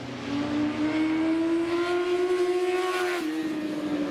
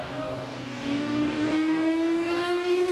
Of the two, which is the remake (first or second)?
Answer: second